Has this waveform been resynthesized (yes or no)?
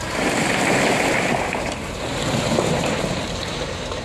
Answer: no